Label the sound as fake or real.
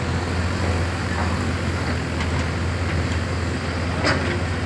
real